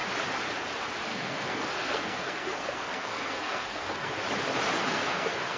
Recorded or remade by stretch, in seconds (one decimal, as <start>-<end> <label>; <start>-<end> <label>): 0.0-1.1 recorded; 1.1-4.1 remade; 4.1-4.8 recorded; 4.8-5.6 remade